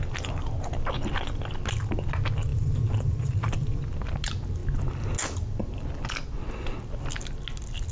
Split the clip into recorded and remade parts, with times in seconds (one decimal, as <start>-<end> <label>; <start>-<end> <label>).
0.0-2.5 recorded; 2.5-3.8 remade; 3.8-7.9 recorded